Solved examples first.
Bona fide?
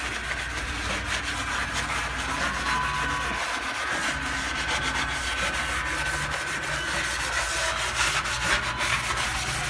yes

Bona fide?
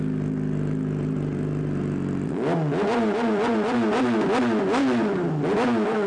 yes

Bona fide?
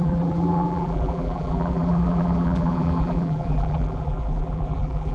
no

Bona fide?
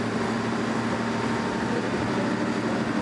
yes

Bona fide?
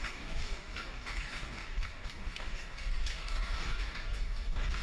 no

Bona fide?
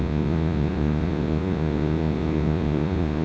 no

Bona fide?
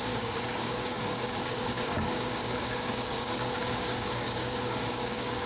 no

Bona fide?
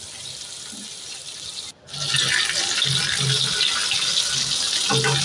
yes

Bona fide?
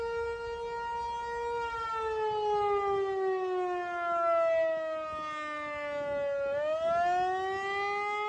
yes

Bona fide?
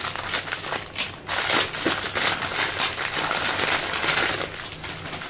yes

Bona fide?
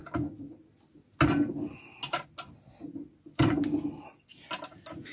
yes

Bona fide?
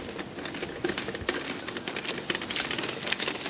yes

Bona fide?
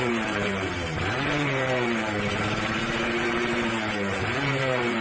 no